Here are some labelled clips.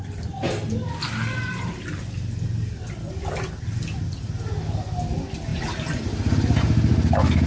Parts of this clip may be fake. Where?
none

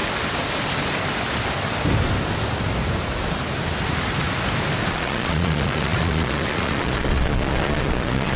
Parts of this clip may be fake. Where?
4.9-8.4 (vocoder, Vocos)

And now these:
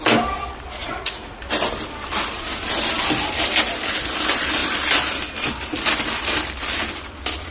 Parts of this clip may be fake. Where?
0.8-1.4 (vocoder, Vocos)

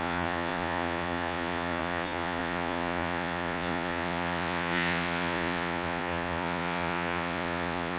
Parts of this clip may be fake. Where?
0.0-8.0 (vocoder, Vocos)

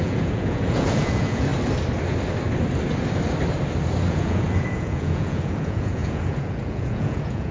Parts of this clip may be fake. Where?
0.0-1.5 (vocoder, Vocos); 4.1-7.5

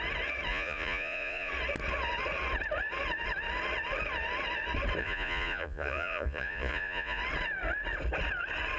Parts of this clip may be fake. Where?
0.5-1.5 (vocoder, Vocos); 5.0-7.2